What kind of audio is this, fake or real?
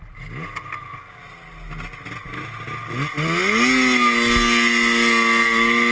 real